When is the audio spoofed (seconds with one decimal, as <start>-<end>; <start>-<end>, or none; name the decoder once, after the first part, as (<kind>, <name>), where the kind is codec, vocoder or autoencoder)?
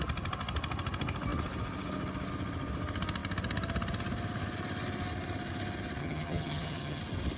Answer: 6.0-7.0 (vocoder, HiFi-GAN)